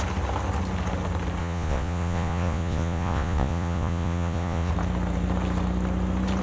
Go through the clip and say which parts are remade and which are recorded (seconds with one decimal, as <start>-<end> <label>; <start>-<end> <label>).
0.0-1.4 recorded; 1.4-4.7 remade; 4.7-6.4 recorded

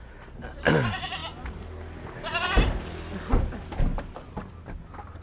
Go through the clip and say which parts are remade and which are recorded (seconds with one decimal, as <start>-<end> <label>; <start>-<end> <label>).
0.0-5.2 recorded